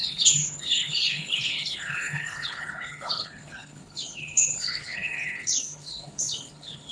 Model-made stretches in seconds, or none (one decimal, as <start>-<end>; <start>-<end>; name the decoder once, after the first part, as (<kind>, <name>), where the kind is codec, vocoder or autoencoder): 0.0-6.9 (codec, HILCodec)